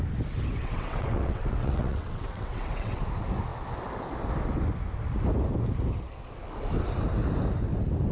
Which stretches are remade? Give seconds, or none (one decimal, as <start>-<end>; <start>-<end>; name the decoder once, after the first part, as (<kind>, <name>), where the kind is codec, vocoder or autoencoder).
0.6-3.0 (vocoder, WaveNeXt)